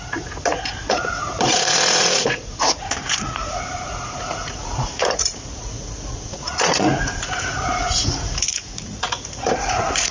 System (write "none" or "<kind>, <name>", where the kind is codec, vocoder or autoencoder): vocoder, Vocos